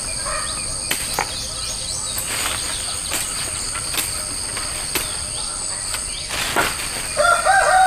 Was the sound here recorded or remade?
recorded